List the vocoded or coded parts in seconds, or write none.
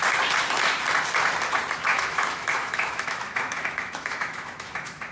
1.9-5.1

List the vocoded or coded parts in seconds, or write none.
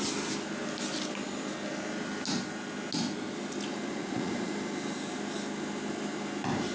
3.9-4.5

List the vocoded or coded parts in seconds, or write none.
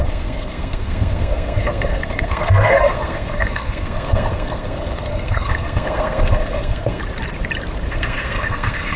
0.0-7.0; 7.9-9.0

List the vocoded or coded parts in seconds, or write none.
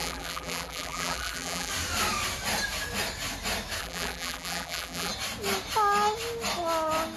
0.0-1.7; 3.8-5.1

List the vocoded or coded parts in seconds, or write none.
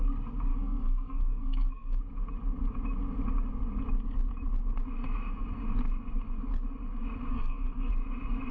0.5-2.0; 7.3-7.9